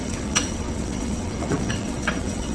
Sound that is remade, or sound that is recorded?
remade